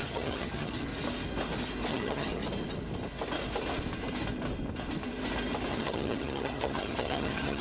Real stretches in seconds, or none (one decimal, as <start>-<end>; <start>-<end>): 0.9-1.9; 2.4-5.7